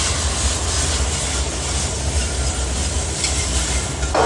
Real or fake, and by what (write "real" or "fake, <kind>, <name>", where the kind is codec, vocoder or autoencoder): real